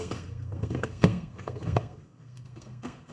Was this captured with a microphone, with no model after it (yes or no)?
no